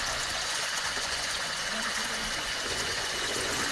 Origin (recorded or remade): remade